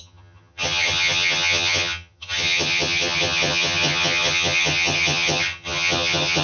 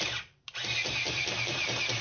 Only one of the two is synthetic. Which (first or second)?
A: first